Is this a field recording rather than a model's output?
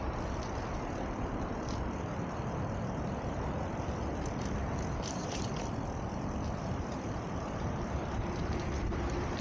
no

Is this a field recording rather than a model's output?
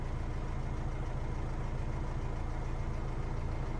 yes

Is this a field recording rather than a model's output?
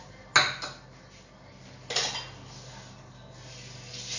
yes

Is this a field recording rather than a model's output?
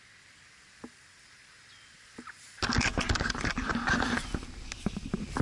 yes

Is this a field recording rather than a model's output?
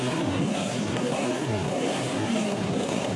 no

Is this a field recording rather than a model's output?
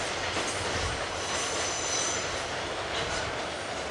yes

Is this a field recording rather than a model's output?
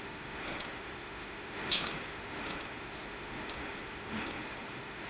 no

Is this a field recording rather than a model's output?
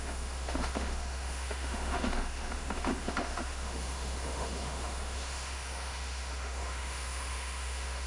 no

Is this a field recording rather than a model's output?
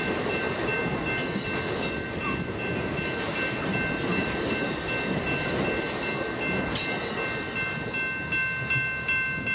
yes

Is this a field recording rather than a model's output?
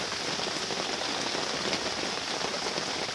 yes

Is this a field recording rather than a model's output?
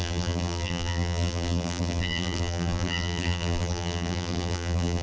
no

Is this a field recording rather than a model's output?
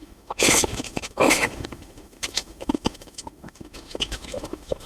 no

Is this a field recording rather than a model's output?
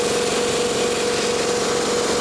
yes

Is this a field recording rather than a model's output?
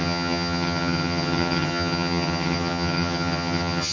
no